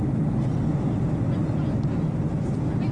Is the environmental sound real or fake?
real